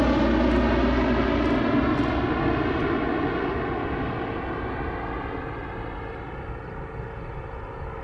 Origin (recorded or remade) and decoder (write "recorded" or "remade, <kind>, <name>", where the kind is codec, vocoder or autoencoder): recorded